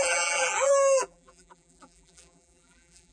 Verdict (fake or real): fake